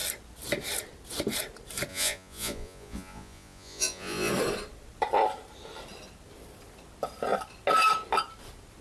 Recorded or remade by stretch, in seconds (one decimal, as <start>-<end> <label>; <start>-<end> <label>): 0.0-1.9 recorded; 1.9-4.3 remade; 4.3-8.8 recorded